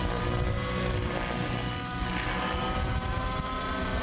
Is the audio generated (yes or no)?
no